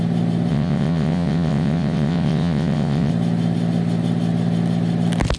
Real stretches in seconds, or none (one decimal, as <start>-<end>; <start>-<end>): 0.0-0.5; 3.1-5.4